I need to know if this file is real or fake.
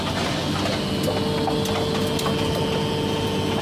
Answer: real